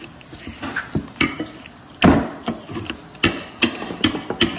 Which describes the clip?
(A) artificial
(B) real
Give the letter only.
B